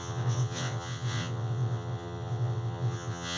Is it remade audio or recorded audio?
remade